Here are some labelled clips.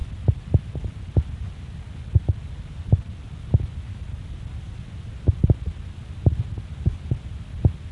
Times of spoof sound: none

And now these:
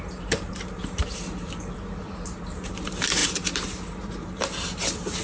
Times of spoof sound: 0.0-5.2